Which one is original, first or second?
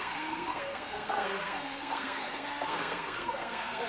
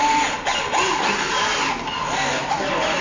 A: second